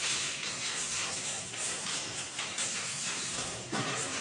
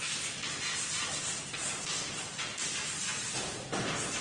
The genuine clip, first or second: second